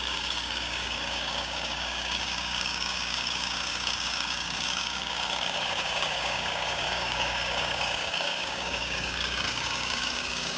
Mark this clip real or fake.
fake